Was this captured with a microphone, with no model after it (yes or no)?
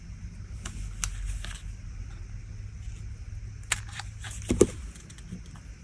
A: yes